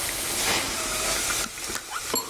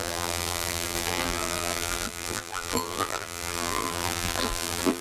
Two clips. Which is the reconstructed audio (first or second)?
second